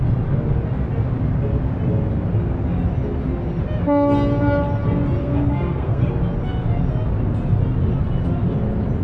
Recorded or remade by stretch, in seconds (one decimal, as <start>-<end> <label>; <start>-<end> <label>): 0.0-5.2 recorded; 5.2-6.1 remade; 6.1-9.0 recorded